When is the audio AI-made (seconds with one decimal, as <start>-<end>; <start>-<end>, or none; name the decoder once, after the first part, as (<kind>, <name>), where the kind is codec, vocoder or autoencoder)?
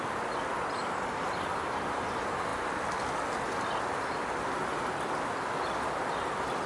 none